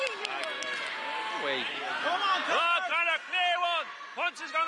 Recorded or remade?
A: recorded